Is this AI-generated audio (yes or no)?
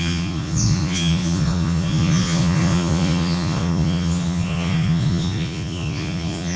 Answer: yes